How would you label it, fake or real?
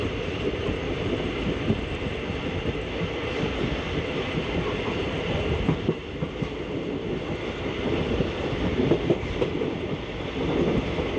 real